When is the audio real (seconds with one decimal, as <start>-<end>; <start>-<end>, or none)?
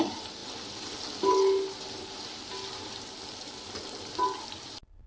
0.0-5.1